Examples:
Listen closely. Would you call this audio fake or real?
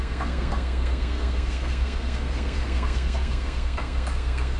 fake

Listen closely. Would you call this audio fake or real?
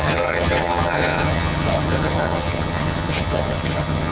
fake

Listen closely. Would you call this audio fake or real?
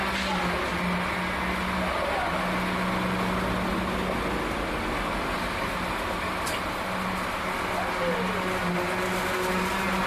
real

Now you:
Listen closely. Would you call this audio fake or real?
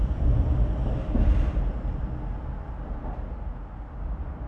real